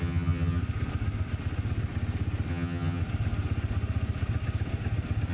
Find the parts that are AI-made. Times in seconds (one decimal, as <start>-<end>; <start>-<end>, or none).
0.0-0.6; 2.5-3.0